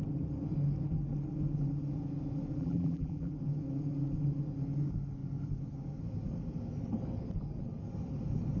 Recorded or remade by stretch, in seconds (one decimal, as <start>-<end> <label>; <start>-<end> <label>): 0.0-2.6 recorded; 2.6-3.3 remade; 3.3-8.6 recorded